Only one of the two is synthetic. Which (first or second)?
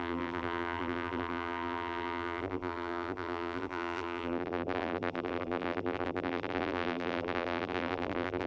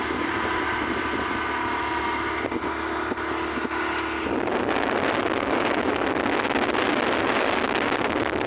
first